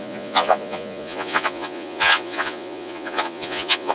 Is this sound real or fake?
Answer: fake